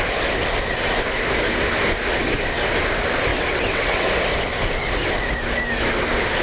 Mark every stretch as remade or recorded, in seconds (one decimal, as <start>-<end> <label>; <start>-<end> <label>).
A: 0.0-3.3 recorded; 3.3-4.1 remade; 4.1-6.4 recorded